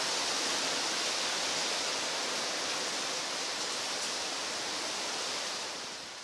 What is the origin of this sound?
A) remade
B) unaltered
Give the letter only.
B